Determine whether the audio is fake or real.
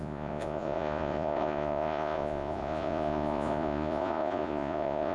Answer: fake